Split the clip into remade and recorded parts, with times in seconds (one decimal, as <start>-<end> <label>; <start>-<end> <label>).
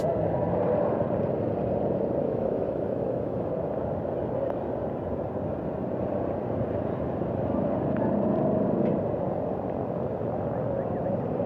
0.0-2.2 recorded; 2.2-3.5 remade; 3.5-11.5 recorded